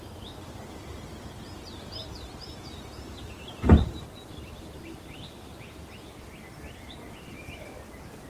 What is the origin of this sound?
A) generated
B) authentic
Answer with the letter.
B